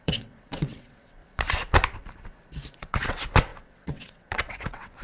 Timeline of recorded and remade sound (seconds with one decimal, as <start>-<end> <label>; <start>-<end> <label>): 0.0-1.2 remade; 1.2-2.8 recorded; 2.8-5.0 remade